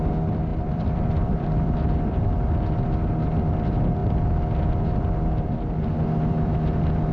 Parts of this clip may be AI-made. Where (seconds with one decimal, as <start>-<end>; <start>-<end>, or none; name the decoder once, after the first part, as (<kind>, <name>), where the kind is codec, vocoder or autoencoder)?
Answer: 0.5-2.2 (vocoder, BigVGAN v2)